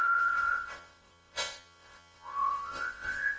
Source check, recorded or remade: remade